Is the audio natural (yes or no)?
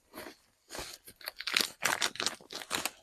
yes